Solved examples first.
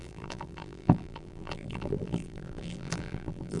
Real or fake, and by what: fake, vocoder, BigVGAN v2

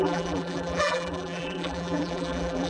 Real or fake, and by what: fake, vocoder, BigVGAN v2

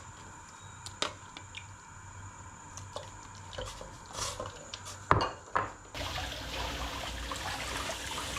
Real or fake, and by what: real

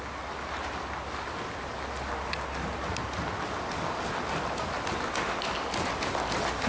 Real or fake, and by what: real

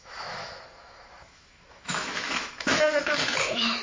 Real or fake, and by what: fake, autoencoder, DAC-VAE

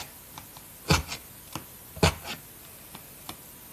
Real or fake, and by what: real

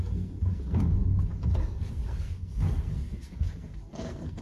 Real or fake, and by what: fake, codec, SNAC